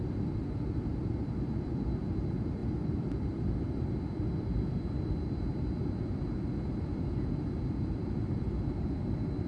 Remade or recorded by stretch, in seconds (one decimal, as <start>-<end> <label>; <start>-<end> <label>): 0.0-9.5 remade